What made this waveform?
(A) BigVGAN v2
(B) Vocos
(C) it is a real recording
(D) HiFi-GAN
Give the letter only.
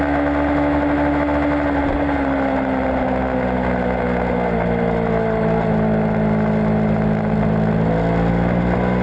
C